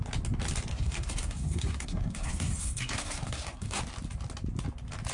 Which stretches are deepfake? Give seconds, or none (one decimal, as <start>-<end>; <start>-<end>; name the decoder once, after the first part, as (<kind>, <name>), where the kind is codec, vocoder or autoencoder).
0.7-3.8 (codec, SNAC)